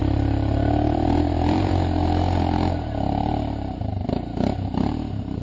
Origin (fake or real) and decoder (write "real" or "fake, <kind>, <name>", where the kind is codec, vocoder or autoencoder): fake, vocoder, BigVGAN v2